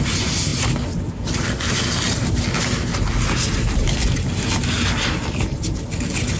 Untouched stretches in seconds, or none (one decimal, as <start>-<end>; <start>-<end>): 0.0-6.4